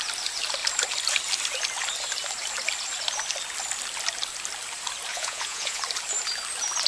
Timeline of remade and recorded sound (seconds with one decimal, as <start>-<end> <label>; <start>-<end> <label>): 0.0-5.1 recorded; 5.1-5.8 remade; 5.8-6.9 recorded

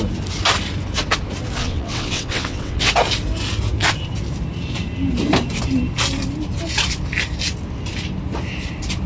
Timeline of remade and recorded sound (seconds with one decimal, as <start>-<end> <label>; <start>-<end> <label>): 0.0-1.6 recorded; 1.6-2.9 remade; 2.9-9.1 recorded